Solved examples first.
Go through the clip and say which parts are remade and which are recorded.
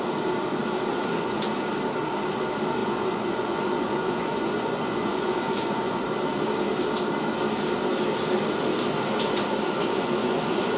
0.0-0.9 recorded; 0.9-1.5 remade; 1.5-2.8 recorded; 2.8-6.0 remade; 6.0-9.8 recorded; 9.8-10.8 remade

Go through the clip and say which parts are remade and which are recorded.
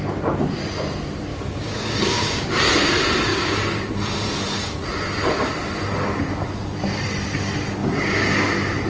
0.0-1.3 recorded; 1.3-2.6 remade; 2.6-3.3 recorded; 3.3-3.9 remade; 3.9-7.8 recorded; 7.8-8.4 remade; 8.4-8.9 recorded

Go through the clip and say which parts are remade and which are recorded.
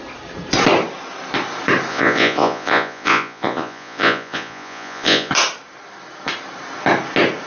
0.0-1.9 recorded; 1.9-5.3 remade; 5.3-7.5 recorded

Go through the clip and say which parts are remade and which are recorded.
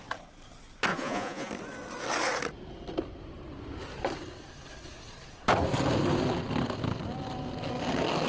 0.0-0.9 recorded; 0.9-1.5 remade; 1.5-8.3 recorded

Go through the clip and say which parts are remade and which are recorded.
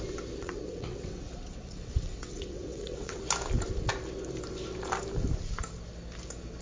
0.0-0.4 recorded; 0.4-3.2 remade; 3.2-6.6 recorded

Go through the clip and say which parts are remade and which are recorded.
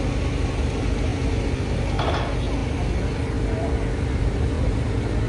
0.0-5.3 recorded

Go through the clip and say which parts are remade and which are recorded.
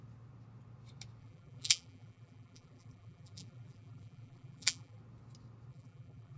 0.0-1.2 recorded; 1.2-5.0 remade; 5.0-5.7 recorded; 5.7-6.4 remade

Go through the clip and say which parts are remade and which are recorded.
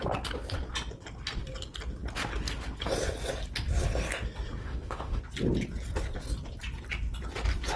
0.0-4.6 recorded; 4.6-5.2 remade; 5.2-7.8 recorded